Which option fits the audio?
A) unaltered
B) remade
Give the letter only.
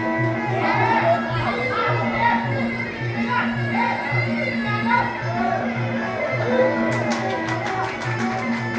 A